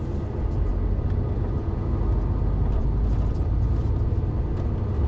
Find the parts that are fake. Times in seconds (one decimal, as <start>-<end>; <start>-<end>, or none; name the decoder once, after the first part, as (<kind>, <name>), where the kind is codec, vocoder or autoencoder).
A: none